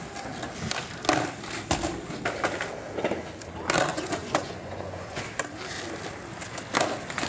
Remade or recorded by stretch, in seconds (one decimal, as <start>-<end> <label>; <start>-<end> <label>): 0.0-3.9 recorded; 3.9-5.2 remade; 5.2-7.3 recorded